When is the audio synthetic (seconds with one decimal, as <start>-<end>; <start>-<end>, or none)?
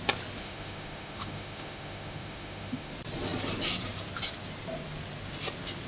0.4-2.9